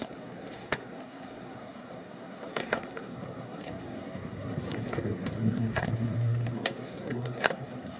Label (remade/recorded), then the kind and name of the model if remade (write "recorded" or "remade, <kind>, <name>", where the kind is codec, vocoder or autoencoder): remade, codec, SNAC